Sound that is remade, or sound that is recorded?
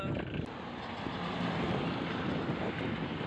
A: recorded